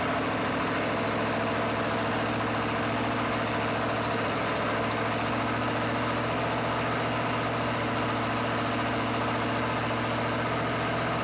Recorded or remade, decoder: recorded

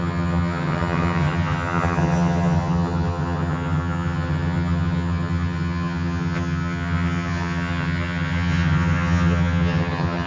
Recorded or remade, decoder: remade, vocoder, HiFi-GAN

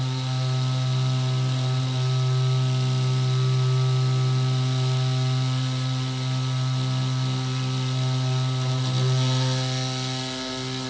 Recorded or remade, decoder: recorded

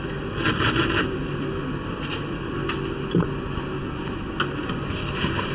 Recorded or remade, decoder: recorded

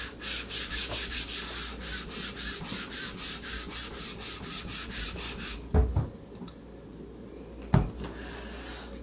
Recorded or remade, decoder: recorded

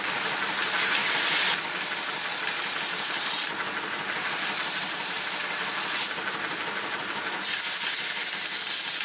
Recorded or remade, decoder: recorded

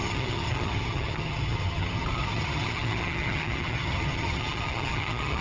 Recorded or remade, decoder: remade, vocoder, HiFi-GAN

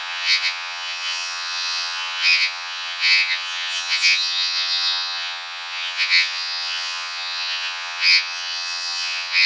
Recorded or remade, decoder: remade, vocoder, HiFi-GAN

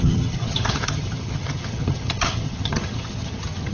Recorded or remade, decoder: remade, vocoder, HiFi-GAN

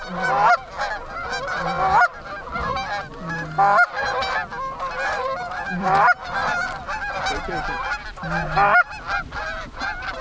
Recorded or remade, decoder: recorded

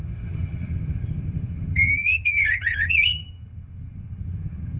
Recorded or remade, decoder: remade, vocoder, HiFi-GAN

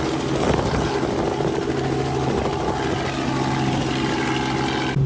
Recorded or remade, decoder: recorded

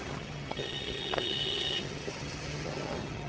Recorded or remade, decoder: remade, vocoder, HiFi-GAN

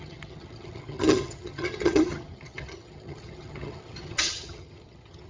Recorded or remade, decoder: remade, vocoder, HiFi-GAN